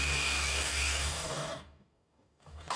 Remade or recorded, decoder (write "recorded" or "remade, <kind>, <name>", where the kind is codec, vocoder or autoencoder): remade, codec, DAC